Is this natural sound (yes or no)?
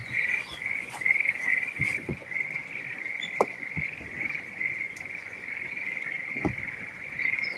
no